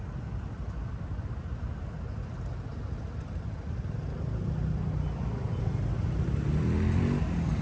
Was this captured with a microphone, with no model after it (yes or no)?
yes